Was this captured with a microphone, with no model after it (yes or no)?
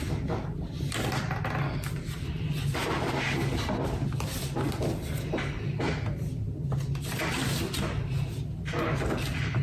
yes